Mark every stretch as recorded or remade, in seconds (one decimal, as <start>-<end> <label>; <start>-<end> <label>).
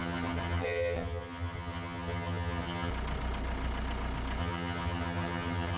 0.0-2.9 remade; 2.9-4.4 recorded; 4.4-5.8 remade